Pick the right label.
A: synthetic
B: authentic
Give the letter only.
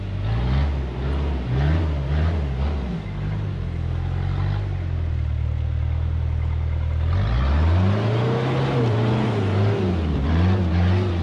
B